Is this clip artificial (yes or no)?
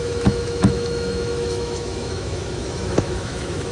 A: yes